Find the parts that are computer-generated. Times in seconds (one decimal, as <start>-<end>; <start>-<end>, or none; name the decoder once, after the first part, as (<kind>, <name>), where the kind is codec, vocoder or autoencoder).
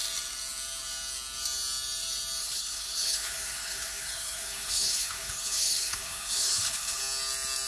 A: 2.4-7.0 (codec, HILCodec)